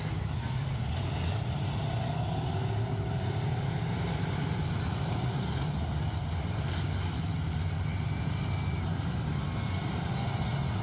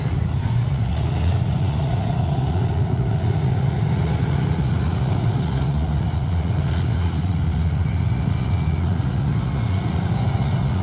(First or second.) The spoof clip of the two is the second